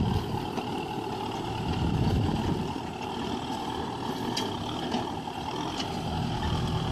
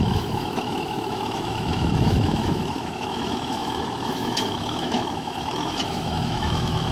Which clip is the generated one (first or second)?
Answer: second